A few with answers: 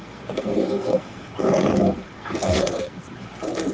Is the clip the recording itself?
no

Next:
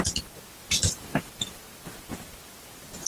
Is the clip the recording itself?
yes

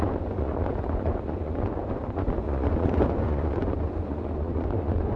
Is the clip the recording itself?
no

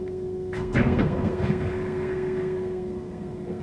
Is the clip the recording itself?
no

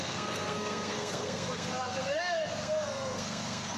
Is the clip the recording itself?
no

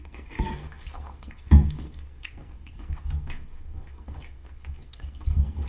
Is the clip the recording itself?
no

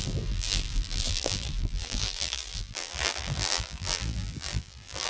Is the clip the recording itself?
no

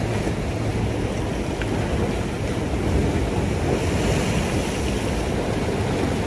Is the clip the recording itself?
yes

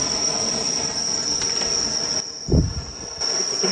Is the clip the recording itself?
yes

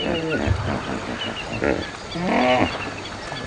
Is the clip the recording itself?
yes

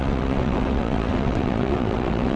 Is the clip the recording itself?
no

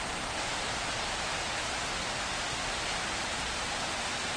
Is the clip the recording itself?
yes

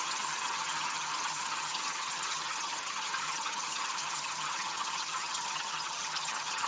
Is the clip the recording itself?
no